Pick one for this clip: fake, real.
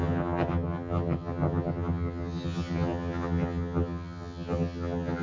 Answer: fake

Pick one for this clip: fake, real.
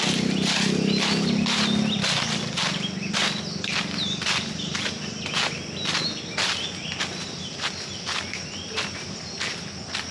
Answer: real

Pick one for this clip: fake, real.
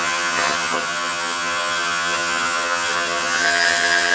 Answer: fake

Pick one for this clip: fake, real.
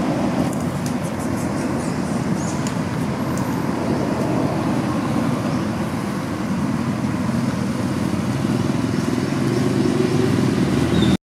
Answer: real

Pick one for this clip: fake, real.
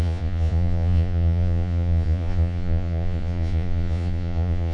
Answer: fake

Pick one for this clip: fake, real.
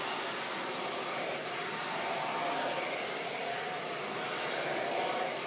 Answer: real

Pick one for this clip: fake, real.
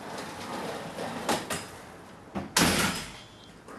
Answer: real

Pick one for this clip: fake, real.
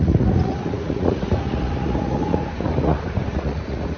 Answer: fake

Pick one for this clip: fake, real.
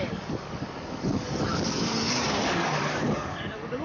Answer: fake